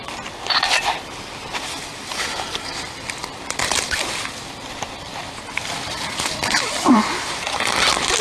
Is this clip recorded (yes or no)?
no